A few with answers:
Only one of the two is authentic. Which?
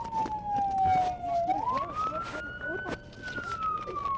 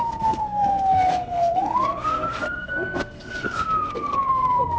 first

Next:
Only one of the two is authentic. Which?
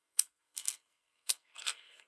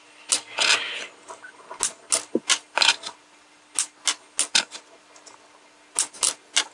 second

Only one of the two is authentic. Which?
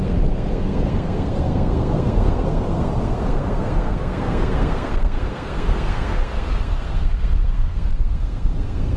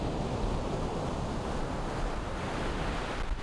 second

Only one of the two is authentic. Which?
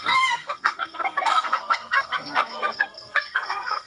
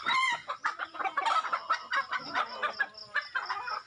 second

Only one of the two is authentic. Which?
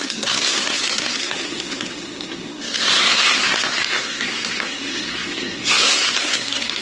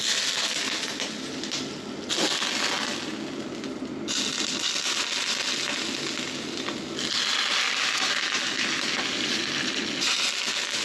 second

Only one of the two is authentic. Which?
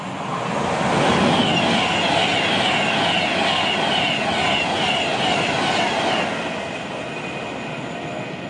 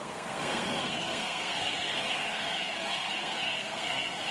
first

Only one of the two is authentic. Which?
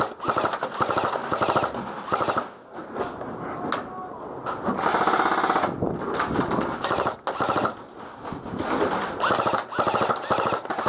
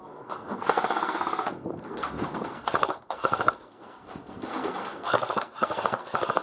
first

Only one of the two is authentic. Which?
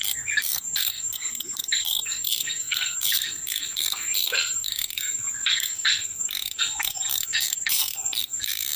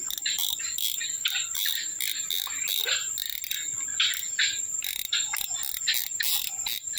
second